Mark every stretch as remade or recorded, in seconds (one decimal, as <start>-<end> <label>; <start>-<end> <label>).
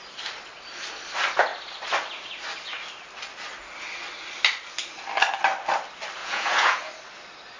0.0-6.2 recorded; 6.2-6.9 remade; 6.9-7.6 recorded